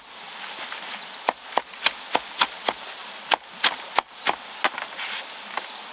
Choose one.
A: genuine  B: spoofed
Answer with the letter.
A